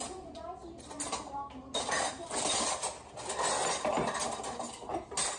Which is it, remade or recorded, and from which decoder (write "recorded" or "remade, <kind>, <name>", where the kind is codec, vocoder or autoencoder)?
recorded